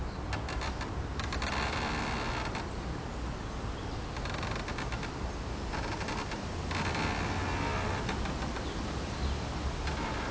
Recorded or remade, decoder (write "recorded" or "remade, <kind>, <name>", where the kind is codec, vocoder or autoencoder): recorded